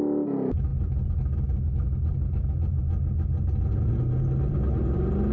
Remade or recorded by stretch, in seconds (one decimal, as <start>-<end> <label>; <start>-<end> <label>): 0.0-5.3 recorded